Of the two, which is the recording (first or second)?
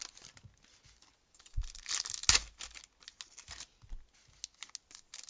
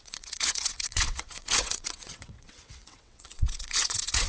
first